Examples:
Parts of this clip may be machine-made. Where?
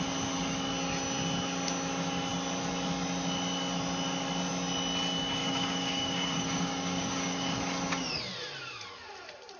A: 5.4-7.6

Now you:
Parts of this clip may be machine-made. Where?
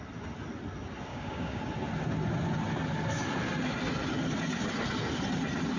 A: 1.1-1.6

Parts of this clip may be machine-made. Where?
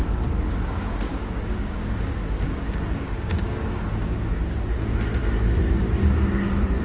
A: 1.1-4.4